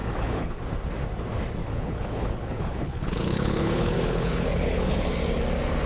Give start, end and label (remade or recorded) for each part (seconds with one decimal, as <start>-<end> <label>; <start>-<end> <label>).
0.0-0.6 remade; 0.6-1.6 recorded; 1.6-5.1 remade; 5.1-5.9 recorded